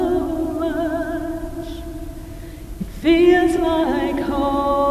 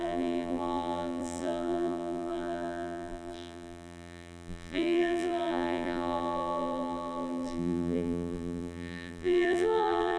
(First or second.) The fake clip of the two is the second